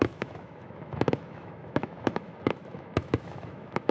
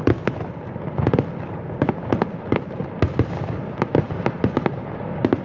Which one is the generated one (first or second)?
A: first